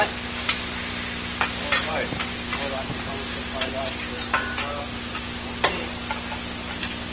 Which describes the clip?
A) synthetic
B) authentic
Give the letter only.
B